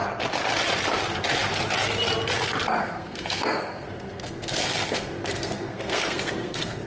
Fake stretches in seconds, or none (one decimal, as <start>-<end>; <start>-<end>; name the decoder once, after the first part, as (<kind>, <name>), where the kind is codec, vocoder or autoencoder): 2.8-6.9 (codec, SNAC)